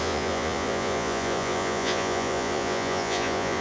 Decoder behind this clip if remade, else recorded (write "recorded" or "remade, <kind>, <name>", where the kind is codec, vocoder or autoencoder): remade, vocoder, Vocos